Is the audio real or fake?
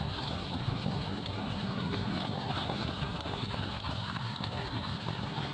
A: fake